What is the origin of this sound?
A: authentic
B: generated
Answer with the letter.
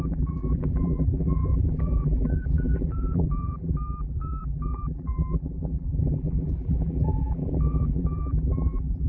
B